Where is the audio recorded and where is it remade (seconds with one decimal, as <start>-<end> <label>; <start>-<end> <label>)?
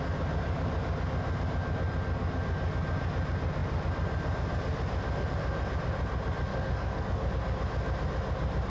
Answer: 0.0-6.5 recorded; 6.5-7.3 remade; 7.3-8.7 recorded